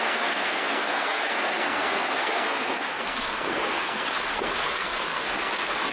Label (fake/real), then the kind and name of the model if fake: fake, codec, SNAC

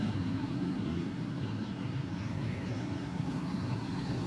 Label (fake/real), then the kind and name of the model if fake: fake, codec, SNAC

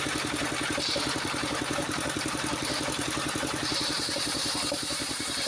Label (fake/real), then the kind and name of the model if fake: fake, vocoder, BigVGAN v2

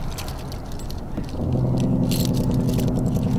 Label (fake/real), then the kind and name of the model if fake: real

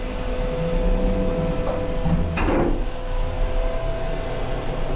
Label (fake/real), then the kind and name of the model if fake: real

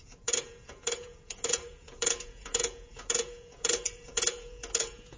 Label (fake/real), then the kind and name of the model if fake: fake, vocoder, Vocos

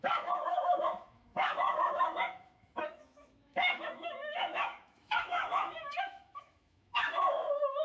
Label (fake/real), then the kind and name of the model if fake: fake, autoencoder, DAC-VAE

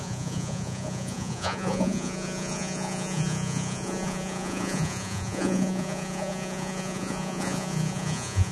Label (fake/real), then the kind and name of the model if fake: fake, vocoder, Vocos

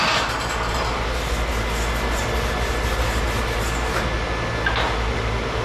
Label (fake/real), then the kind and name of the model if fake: real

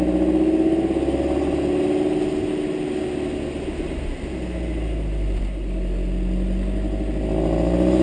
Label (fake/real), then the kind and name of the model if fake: real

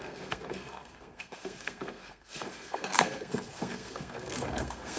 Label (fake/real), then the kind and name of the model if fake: fake, codec, SNAC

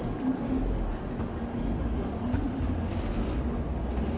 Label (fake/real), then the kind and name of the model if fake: real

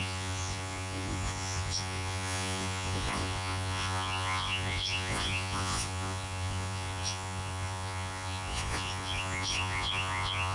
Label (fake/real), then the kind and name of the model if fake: fake, vocoder, Vocos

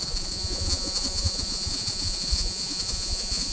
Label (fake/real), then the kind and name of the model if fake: fake, vocoder, Vocos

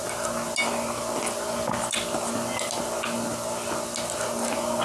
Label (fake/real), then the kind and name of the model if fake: real